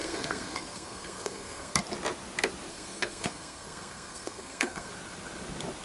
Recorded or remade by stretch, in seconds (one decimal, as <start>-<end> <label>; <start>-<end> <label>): 0.0-1.8 remade; 1.8-2.7 recorded; 2.7-4.9 remade; 4.9-5.8 recorded